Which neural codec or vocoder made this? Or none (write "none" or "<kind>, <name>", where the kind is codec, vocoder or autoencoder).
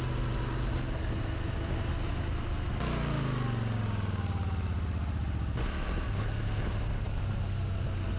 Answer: none